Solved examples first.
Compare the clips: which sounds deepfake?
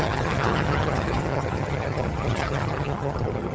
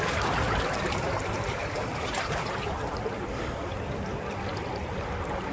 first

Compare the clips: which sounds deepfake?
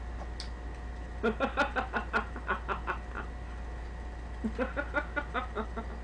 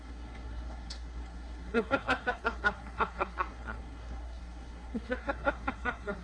second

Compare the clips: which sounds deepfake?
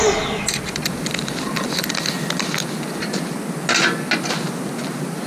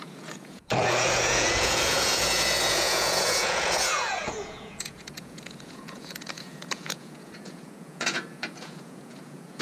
second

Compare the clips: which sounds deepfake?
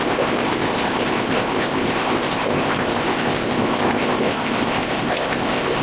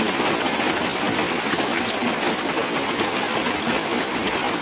first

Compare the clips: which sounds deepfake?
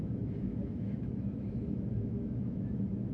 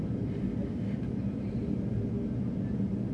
first